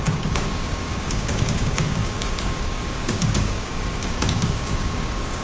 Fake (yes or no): yes